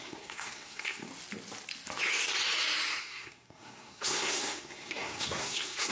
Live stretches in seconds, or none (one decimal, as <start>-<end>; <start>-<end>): 1.1-3.0